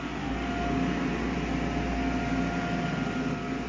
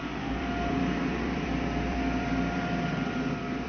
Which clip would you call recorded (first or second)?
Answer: first